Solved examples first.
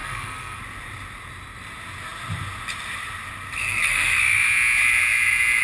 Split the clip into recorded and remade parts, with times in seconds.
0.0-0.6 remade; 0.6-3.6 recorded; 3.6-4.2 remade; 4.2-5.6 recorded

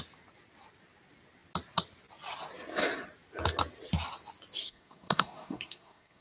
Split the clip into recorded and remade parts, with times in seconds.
0.0-4.6 recorded; 4.6-6.2 remade

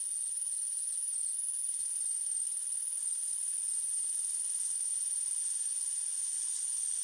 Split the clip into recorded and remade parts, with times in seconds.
0.0-7.0 recorded

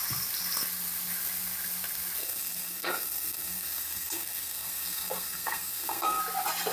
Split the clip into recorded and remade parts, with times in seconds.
0.0-2.2 recorded; 2.2-6.2 remade; 6.2-6.7 recorded